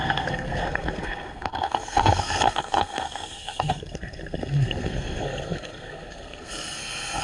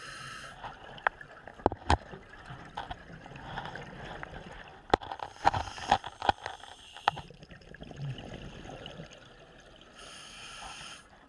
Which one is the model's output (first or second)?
first